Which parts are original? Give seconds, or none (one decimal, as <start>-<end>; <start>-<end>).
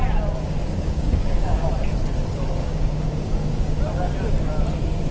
0.0-0.6; 1.7-2.6; 3.8-5.1